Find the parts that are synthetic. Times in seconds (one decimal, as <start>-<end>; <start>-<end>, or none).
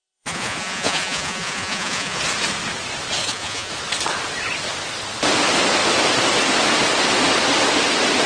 0.0-2.2; 3.2-3.7